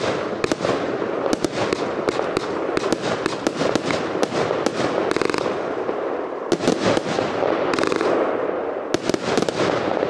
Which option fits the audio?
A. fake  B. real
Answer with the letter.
B